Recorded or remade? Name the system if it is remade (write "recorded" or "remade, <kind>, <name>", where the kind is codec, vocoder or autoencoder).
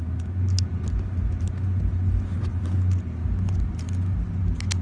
recorded